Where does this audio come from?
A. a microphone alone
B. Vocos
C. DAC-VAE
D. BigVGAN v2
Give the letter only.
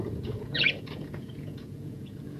B